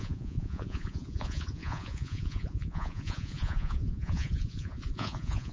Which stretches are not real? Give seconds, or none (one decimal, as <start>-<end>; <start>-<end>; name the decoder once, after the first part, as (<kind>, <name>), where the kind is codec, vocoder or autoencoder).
0.0-5.5 (vocoder, Vocos)